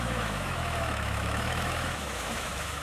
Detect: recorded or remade remade